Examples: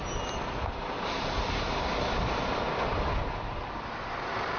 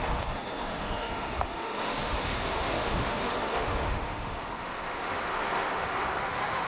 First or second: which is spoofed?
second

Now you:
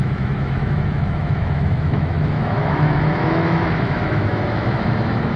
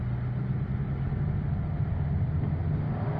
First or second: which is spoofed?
first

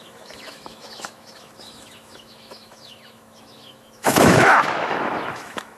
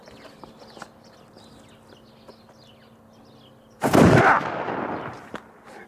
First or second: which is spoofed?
first